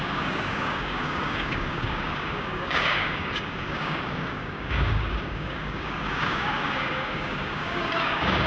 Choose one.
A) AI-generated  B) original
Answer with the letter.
A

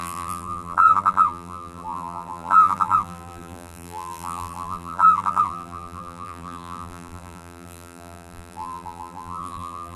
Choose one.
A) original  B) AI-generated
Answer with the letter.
B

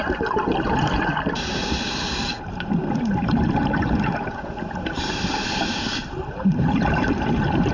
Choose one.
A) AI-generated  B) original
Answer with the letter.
A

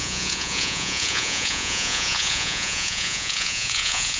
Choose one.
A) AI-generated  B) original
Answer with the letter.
A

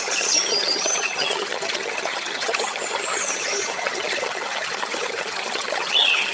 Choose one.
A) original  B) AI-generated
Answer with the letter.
B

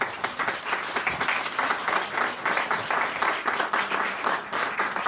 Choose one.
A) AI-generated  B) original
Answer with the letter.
B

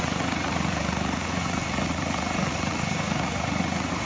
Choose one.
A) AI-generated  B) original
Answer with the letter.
A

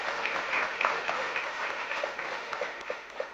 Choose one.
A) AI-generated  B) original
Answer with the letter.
A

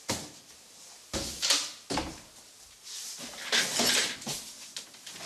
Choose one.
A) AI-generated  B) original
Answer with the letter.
B